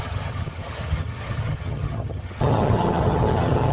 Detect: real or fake fake